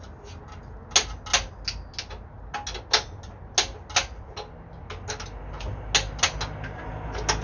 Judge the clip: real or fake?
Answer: real